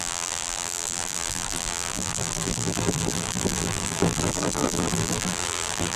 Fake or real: fake